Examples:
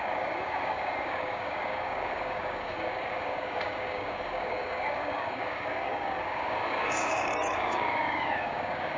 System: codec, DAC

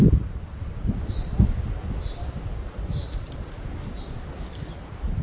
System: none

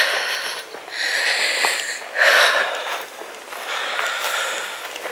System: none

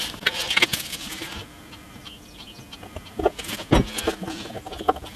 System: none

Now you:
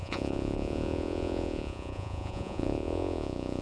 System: vocoder, Vocos